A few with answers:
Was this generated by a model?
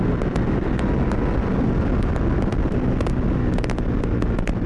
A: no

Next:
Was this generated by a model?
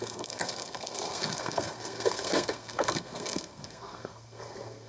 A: yes